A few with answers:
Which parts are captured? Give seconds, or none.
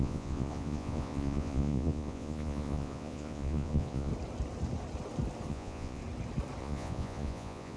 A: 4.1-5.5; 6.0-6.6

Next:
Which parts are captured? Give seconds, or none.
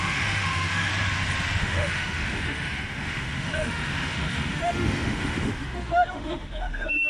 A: 0.9-1.6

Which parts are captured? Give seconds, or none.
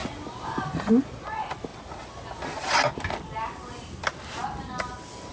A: 0.0-5.3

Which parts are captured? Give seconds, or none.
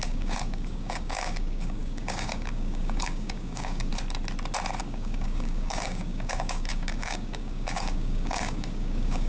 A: 3.9-4.8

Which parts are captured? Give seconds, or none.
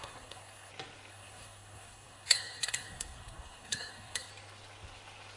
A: 0.7-1.1; 4.3-5.4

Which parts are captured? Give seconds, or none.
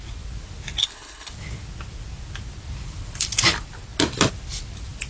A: 0.0-0.8; 1.3-5.1